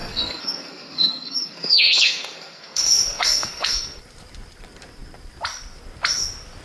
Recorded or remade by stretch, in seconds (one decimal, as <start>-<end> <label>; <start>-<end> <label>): 0.0-4.0 remade; 4.0-6.6 recorded